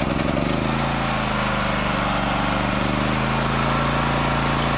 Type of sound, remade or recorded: recorded